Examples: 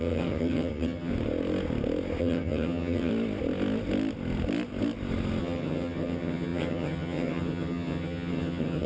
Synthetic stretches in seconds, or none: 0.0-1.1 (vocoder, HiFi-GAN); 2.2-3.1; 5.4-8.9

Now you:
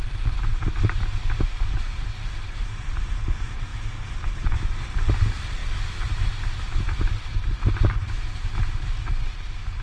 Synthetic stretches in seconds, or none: 0.0-9.8 (vocoder, BigVGAN v2)

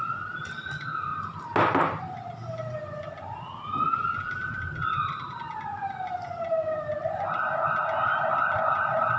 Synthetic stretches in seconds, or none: none

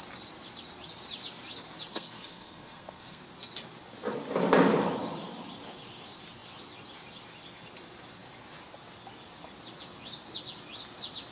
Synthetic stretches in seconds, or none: 1.9-3.2 (codec, SNAC)

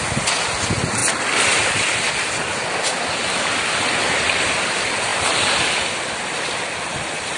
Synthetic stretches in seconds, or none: 1.0-2.0 (vocoder, BigVGAN v2)

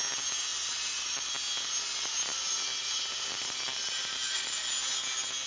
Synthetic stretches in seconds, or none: 0.5-1.3 (vocoder, BigVGAN v2); 2.3-4.6